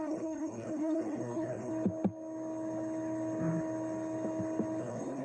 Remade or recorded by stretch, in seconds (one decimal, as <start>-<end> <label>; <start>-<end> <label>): 0.0-1.7 remade; 1.7-4.8 recorded; 4.8-5.2 remade